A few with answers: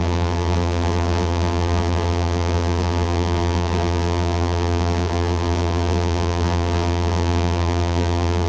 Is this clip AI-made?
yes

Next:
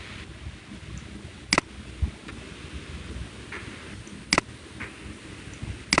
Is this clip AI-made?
no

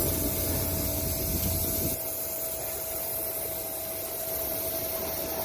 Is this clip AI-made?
no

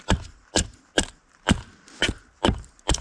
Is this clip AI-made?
no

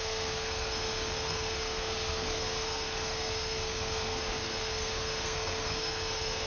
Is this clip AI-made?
yes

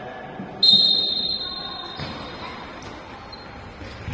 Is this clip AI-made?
no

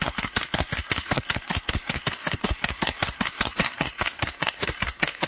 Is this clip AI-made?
yes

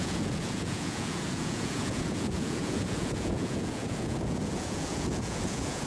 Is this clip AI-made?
yes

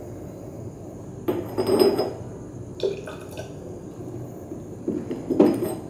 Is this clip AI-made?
no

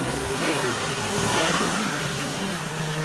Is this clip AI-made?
yes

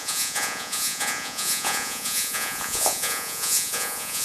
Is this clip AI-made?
yes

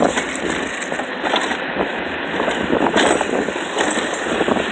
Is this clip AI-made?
no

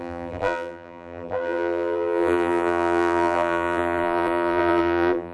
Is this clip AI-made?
yes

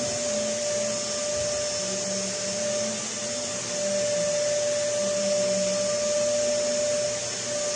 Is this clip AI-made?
no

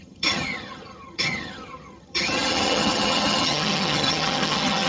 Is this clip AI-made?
yes